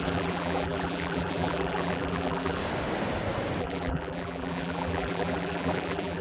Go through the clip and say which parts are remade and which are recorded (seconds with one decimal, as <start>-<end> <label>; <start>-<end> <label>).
0.0-2.6 remade; 2.6-3.6 recorded; 3.6-6.2 remade